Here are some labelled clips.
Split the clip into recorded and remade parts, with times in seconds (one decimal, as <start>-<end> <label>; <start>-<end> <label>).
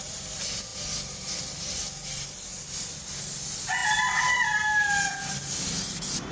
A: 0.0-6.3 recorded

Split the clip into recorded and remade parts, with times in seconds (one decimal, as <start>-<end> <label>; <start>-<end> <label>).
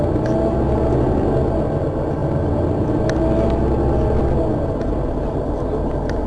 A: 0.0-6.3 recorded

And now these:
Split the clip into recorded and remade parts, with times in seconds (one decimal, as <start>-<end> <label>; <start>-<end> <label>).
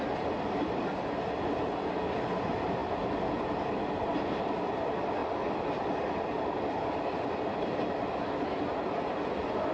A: 0.0-9.7 recorded